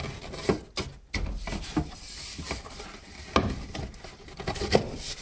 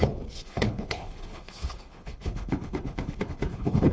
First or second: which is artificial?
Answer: second